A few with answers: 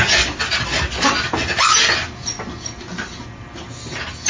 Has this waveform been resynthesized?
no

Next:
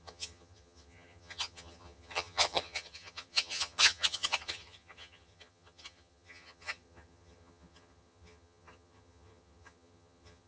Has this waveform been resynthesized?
yes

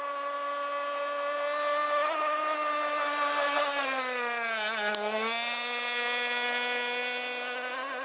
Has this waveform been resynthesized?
no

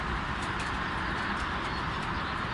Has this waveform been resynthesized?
no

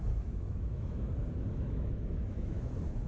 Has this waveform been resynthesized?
yes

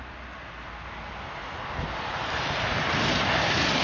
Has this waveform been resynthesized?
no